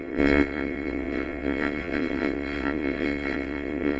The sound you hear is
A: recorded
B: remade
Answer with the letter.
B